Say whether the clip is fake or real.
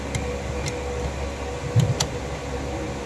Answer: real